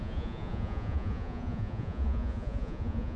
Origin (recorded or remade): remade